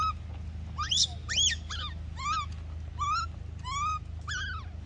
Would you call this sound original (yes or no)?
yes